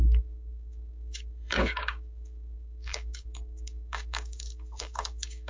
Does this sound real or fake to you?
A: fake